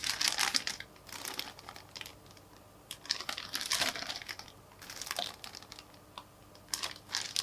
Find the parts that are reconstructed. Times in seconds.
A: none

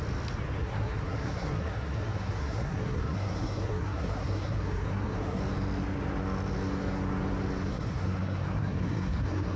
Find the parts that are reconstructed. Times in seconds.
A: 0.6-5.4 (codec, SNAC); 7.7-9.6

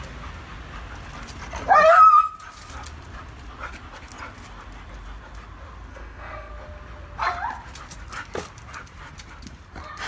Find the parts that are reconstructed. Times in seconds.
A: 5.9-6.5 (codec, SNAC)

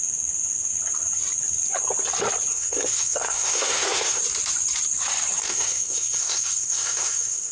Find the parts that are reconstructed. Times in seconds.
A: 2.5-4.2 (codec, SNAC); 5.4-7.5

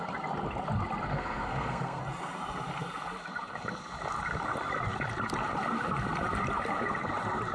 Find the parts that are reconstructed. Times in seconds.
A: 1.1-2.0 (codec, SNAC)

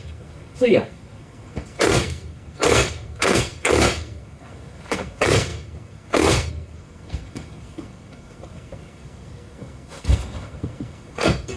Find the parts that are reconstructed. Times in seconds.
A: 0.0-11.6 (codec, SNAC)